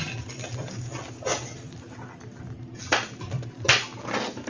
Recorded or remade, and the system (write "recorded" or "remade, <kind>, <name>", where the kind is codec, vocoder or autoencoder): recorded